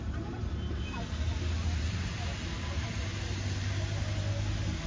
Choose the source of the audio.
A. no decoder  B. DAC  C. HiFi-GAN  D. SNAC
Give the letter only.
A